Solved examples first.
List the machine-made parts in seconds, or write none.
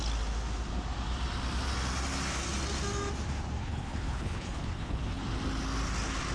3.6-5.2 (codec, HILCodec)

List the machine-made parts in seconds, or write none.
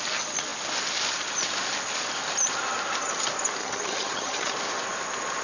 3.6-4.5 (vocoder, HiFi-GAN)